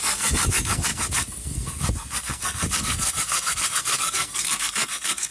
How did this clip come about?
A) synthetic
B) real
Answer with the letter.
A